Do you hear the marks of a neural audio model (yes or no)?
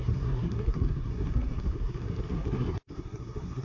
yes